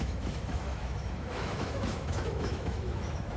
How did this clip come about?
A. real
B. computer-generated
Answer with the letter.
B